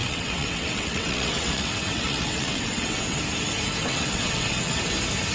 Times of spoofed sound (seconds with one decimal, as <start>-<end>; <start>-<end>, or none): 0.0-3.2; 3.8-4.8